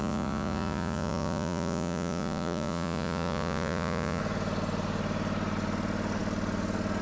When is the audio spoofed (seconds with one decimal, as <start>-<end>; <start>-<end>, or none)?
0.0-4.2